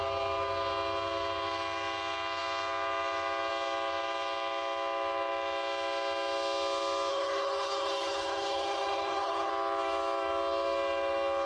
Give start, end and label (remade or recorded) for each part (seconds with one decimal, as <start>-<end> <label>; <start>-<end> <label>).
0.0-7.1 recorded; 7.1-9.5 remade; 9.5-11.5 recorded